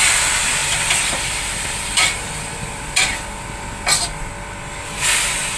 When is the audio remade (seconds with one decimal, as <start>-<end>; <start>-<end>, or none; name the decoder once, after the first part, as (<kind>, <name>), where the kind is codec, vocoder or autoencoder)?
0.0-3.1 (vocoder, BigVGAN v2)